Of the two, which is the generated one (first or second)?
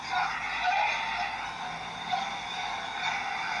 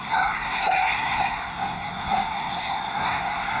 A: second